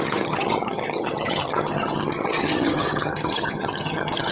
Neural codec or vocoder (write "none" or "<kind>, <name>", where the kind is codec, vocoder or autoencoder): vocoder, HiFi-GAN